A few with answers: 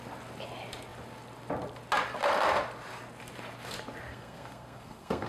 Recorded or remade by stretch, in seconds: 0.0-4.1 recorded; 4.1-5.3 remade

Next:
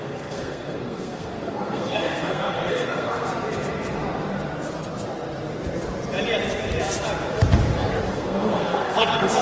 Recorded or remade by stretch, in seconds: 0.0-3.3 remade; 3.3-8.1 recorded; 8.1-9.4 remade